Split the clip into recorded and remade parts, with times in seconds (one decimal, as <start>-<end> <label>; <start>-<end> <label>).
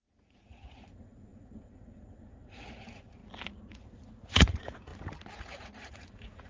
0.0-3.2 remade; 3.2-3.7 recorded; 3.7-4.9 remade; 4.9-5.4 recorded; 5.4-6.5 remade